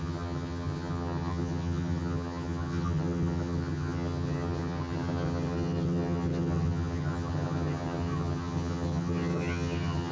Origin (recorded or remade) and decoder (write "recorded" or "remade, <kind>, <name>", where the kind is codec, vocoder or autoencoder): remade, vocoder, HiFi-GAN